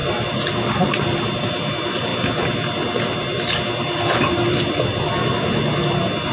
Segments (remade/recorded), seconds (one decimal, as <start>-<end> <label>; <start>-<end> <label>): 0.0-1.4 remade; 1.4-6.3 recorded